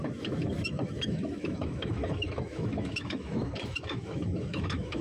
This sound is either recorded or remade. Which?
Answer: remade